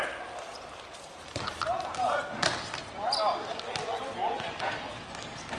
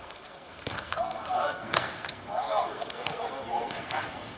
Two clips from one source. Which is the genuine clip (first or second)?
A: first